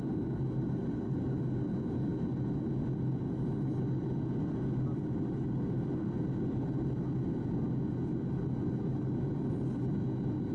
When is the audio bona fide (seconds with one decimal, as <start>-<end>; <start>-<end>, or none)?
0.0-10.5